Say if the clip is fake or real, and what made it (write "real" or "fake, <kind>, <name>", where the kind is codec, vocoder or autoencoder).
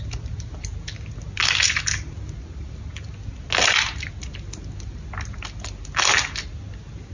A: real